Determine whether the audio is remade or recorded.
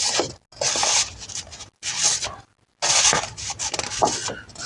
recorded